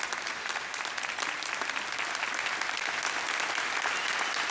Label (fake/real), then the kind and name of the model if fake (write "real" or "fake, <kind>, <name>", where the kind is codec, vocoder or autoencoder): real